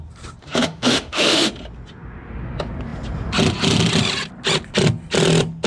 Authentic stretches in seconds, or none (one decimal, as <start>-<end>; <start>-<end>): 0.0-0.4; 1.5-5.7